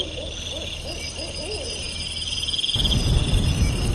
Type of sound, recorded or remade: recorded